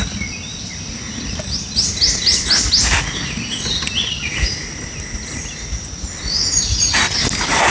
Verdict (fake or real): real